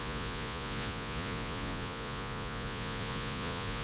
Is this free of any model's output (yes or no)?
no